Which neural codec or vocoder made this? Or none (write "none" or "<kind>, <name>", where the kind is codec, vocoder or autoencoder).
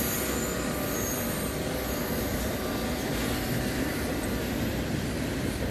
none